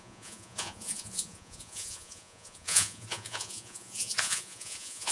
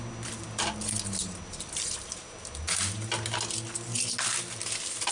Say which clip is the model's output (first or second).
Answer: first